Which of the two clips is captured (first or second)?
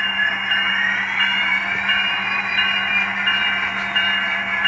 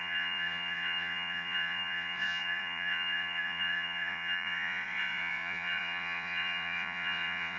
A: first